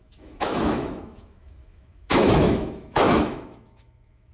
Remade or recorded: remade